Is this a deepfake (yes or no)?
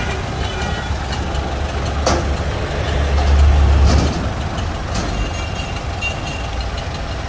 no